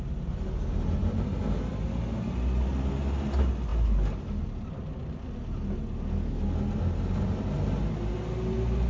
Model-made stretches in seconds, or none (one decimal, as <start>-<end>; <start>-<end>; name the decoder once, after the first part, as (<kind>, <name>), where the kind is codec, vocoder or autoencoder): none